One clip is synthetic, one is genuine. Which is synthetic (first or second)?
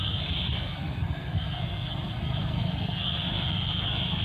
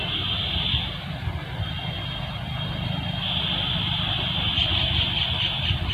first